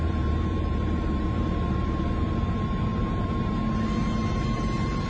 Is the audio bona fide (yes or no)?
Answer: no